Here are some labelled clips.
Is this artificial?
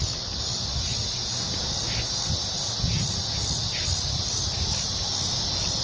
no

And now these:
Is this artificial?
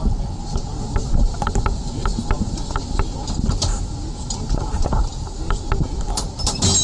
no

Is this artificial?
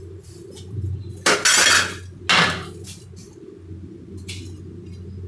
no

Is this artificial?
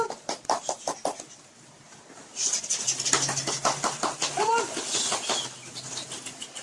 no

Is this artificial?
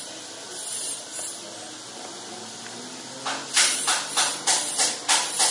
no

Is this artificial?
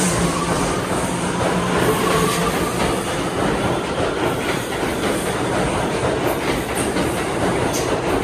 yes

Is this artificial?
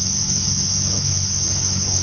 yes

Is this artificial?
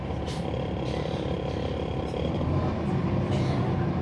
yes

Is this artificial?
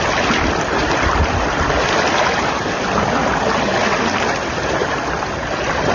yes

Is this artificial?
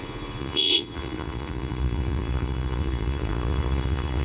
yes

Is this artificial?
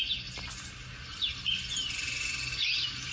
no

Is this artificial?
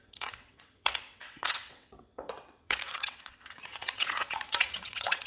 yes